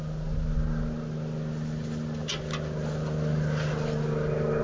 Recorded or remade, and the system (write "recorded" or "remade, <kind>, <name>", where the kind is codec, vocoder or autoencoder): recorded